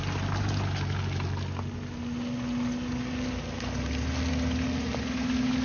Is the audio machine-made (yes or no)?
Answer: no